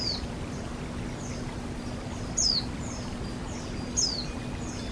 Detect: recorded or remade recorded